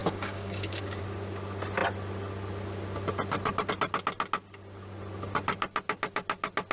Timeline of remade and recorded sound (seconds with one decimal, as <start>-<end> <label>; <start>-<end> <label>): 0.0-1.0 remade; 1.0-6.7 recorded